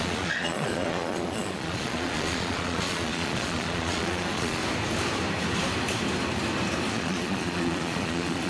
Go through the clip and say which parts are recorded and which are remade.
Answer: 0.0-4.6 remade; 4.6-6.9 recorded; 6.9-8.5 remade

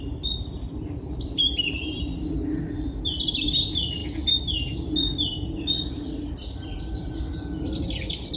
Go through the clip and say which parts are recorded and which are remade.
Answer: 0.0-8.4 recorded